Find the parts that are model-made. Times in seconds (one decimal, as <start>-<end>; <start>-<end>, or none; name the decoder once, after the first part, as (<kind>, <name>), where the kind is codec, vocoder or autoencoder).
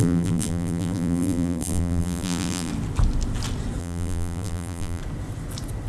0.0-2.7 (vocoder, BigVGAN v2); 3.8-5.0